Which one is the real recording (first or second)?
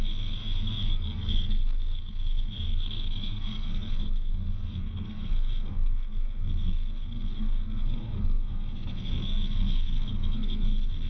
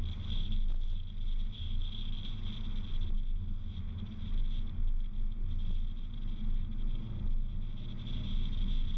second